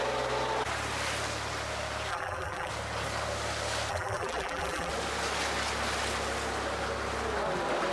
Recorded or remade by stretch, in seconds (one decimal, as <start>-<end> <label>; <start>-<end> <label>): 0.0-2.1 recorded; 2.1-2.7 remade; 2.7-3.9 recorded; 3.9-4.9 remade; 4.9-7.9 recorded